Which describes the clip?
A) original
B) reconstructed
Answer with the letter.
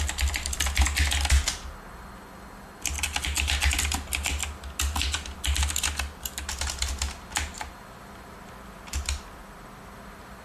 A